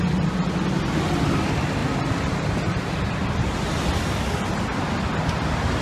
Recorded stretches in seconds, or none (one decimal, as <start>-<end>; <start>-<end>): 0.0-5.8